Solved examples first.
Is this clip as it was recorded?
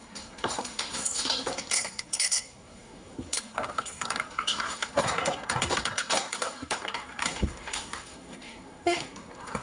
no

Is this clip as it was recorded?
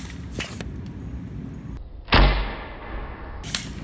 yes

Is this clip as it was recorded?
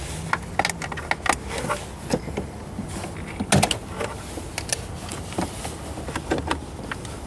yes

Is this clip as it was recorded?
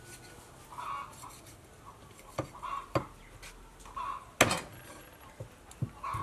yes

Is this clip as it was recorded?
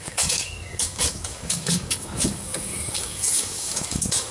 no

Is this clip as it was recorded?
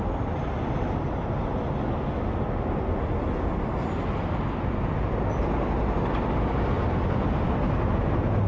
yes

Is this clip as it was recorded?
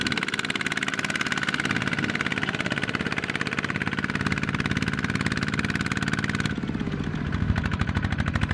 yes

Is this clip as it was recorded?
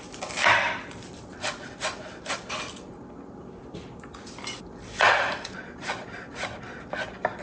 no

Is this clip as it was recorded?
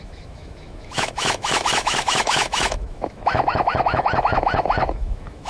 no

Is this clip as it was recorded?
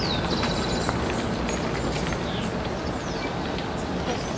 yes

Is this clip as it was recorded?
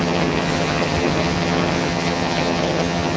no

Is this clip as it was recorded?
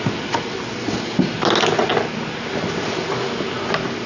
yes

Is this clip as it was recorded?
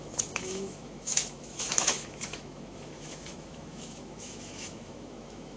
no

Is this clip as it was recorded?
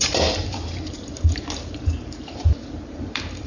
no